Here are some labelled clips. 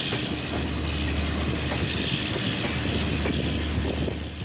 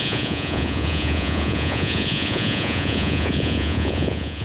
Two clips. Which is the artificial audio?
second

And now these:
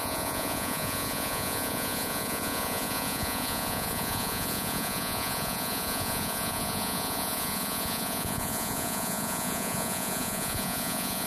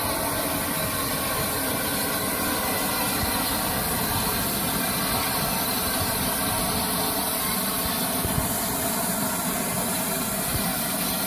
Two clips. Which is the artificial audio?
first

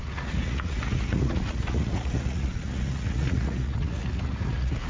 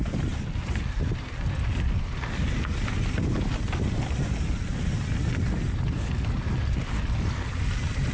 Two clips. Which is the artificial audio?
first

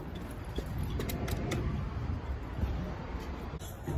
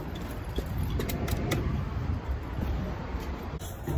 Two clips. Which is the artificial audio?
second